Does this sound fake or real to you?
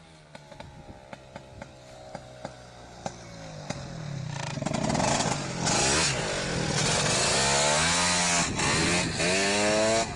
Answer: real